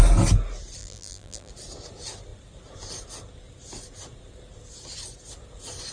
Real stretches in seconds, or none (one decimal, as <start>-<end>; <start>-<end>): 0.0-0.8; 1.5-5.9